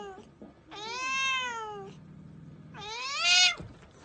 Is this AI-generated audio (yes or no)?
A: no